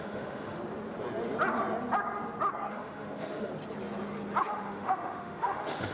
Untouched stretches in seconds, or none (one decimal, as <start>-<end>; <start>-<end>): 0.6-2.7; 3.5-4.4

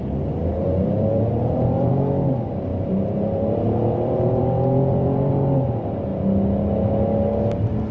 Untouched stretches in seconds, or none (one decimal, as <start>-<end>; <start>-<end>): 0.0-0.5; 1.9-2.7; 5.3-7.9

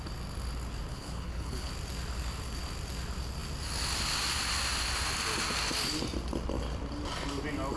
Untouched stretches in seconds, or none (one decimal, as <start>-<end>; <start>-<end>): 0.0-0.9; 1.7-7.8